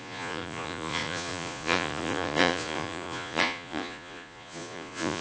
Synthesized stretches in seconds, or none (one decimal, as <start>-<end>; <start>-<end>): 0.0-5.2